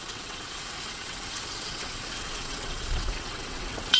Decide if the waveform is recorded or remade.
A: remade